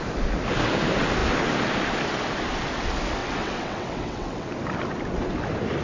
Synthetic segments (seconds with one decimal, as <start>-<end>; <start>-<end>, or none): 3.2-4.5